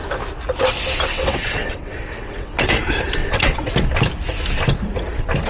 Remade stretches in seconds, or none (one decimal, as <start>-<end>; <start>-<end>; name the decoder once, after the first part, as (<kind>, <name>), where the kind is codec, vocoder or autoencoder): 1.1-2.8 (vocoder, WaveNeXt); 3.2-3.7